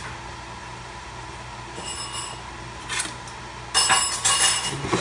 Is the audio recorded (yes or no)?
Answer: yes